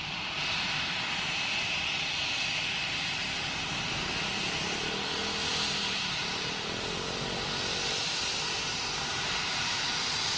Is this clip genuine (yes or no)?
no